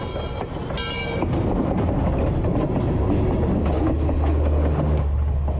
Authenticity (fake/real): real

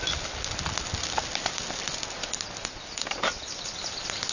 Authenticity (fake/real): real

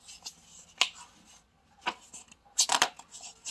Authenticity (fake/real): real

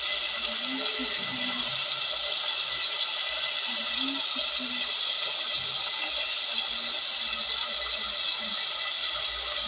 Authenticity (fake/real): real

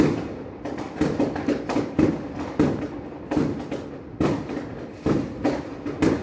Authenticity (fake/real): real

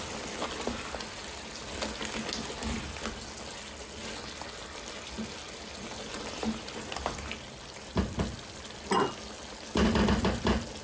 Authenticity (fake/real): real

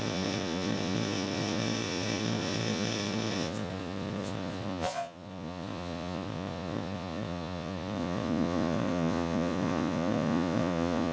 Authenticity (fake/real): fake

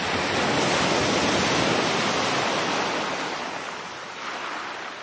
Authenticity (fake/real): real